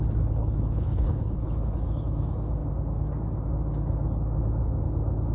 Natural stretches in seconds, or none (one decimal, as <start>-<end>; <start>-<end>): 0.0-0.4; 1.5-5.3